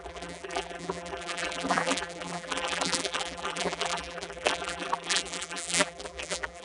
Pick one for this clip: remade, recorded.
remade